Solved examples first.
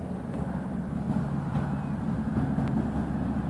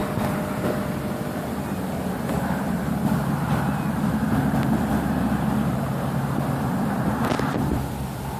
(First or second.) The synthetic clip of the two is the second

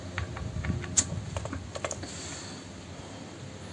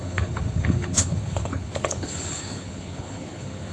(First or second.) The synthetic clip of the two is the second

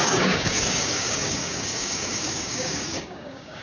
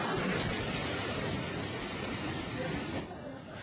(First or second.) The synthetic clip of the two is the first